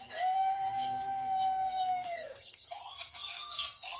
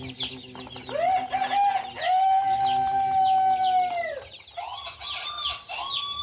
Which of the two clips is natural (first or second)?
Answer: second